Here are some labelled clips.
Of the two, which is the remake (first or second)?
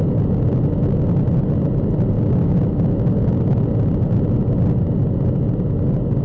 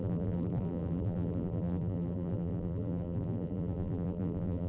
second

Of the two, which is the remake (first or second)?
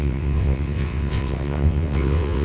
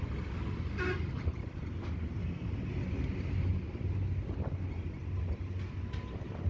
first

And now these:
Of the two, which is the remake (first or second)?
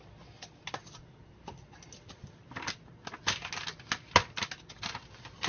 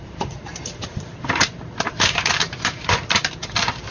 second